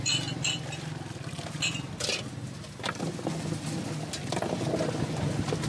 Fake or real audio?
real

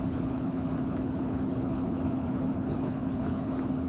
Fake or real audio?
fake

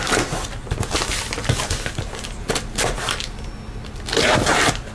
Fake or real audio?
real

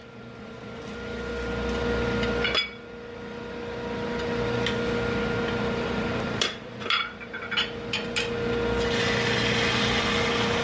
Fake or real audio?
real